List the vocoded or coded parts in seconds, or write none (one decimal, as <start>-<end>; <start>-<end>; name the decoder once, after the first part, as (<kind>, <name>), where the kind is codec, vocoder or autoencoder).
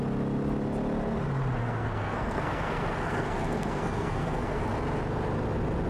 1.6-4.6 (codec, SNAC)